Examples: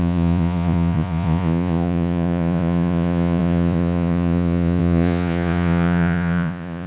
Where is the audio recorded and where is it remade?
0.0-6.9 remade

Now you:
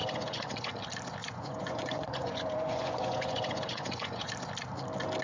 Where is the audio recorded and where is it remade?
0.0-0.7 remade; 0.7-1.2 recorded; 1.2-4.3 remade; 4.3-5.2 recorded

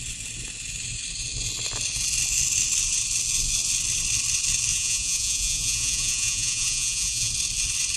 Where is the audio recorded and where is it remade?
0.0-4.7 recorded; 4.7-7.3 remade; 7.3-8.0 recorded

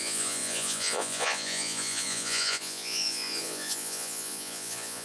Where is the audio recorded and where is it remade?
0.0-5.0 remade